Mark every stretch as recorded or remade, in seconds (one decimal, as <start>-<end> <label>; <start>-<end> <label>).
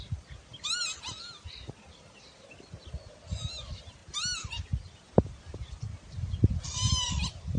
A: 0.0-7.6 recorded